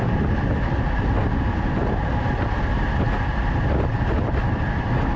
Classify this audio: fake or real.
real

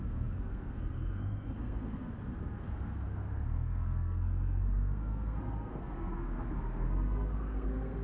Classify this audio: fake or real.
fake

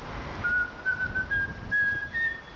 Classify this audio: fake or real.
real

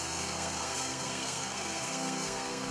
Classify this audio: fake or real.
fake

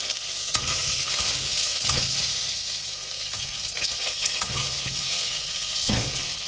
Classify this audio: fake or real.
fake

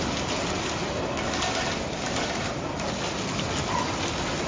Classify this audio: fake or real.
real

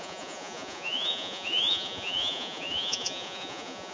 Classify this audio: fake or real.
fake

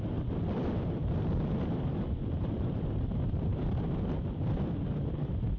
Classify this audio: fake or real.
fake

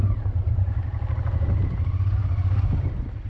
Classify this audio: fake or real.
real